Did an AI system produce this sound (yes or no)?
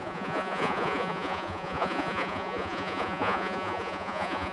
yes